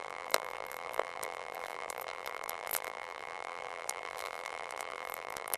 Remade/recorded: remade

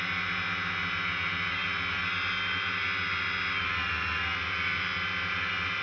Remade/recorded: recorded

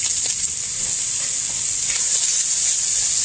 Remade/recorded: recorded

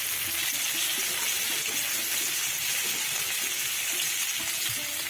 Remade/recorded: recorded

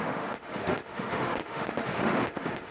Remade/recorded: remade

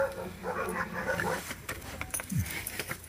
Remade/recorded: remade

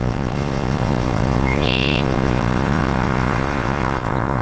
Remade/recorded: remade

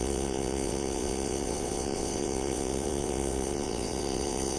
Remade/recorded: remade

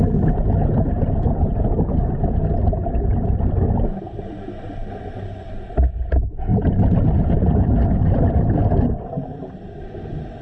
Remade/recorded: recorded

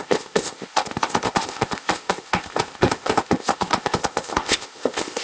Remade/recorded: remade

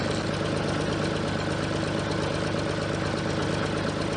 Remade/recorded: recorded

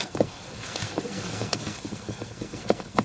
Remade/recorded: remade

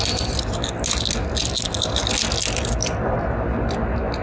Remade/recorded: recorded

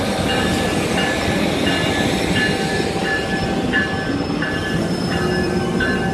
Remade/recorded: recorded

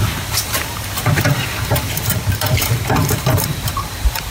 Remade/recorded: remade